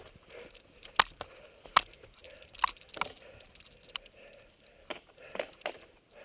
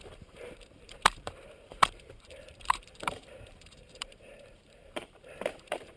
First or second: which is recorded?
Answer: first